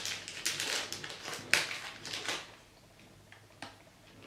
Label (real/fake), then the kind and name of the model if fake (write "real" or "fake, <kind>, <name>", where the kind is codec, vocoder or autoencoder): real